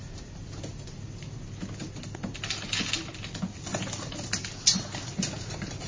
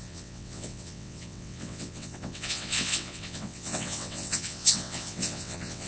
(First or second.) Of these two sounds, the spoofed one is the second